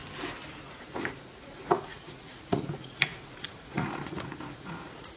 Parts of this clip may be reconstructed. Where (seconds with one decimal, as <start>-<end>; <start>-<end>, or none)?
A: 0.6-5.2